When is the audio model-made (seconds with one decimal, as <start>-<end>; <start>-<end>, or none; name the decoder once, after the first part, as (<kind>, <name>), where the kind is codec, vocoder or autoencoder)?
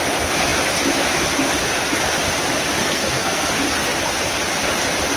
2.8-3.5 (codec, SNAC)